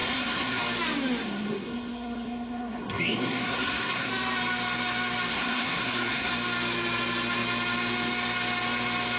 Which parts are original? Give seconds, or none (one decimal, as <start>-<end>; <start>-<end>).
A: 0.6-1.2; 4.1-5.3; 6.3-9.2